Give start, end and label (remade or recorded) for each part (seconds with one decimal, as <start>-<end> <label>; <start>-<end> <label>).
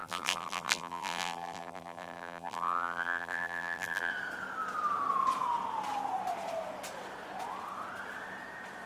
0.0-4.1 remade; 4.1-8.9 recorded